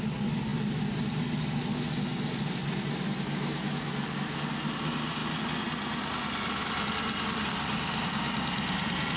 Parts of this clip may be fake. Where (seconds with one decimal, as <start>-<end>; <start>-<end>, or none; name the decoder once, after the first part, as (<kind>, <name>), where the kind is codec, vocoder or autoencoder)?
none